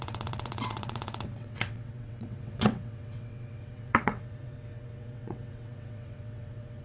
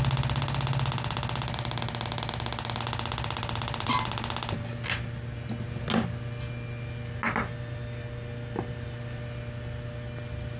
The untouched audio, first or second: second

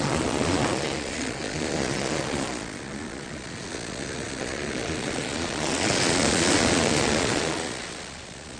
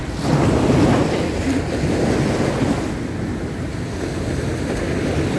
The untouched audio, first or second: second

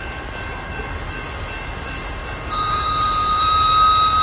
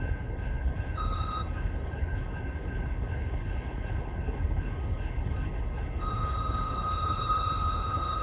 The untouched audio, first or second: first